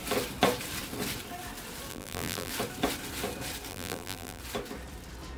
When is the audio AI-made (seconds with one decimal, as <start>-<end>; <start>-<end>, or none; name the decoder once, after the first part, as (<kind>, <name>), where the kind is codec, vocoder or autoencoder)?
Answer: 1.9-2.5 (vocoder, BigVGAN v2); 3.7-4.4